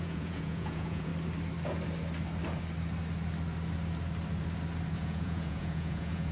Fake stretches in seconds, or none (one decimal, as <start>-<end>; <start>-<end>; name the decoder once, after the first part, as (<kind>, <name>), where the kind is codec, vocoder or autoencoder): 0.0-1.1 (vocoder, Vocos); 4.9-6.3